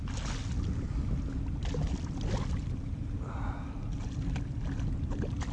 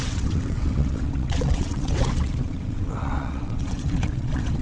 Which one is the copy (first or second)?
second